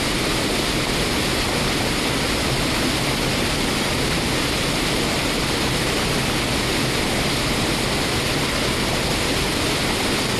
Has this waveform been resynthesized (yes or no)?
no